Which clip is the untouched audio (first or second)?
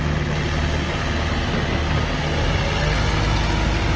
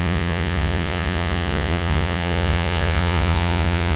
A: first